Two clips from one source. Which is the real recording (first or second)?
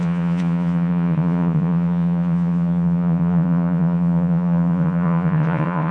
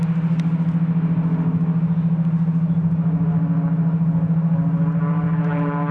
second